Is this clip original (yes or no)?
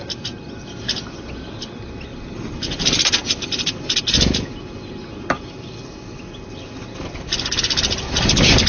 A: yes